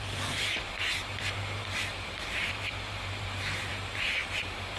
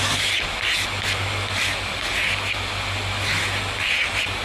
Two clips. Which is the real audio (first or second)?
second